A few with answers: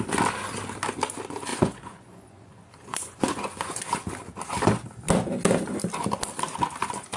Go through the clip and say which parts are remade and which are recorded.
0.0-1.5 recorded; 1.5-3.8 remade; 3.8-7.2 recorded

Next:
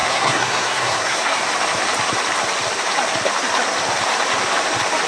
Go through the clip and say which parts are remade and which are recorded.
0.0-1.4 remade; 1.4-5.1 recorded

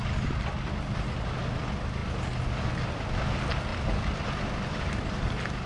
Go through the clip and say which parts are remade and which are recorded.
0.0-3.7 recorded; 3.7-5.3 remade; 5.3-5.7 recorded

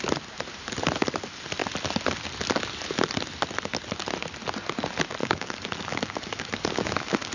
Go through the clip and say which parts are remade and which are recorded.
0.0-5.2 recorded; 5.2-7.3 remade

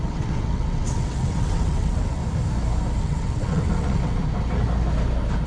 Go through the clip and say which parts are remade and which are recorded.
0.0-2.2 remade; 2.2-3.0 recorded; 3.0-4.2 remade; 4.2-5.5 recorded

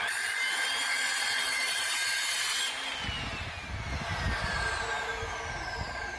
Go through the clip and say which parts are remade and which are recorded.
0.0-0.9 recorded; 0.9-1.9 remade; 1.9-6.2 recorded

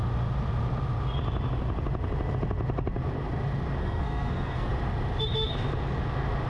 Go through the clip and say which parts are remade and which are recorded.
0.0-3.8 recorded; 3.8-4.7 remade; 4.7-6.5 recorded